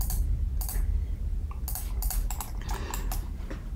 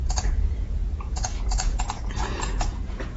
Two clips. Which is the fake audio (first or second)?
second